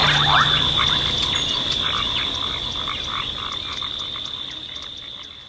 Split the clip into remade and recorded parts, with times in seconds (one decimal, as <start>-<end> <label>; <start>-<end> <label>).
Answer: 0.0-5.5 recorded